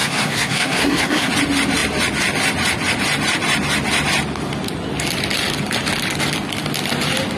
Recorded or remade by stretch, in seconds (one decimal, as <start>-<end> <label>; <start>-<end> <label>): 0.0-1.3 remade; 1.3-7.4 recorded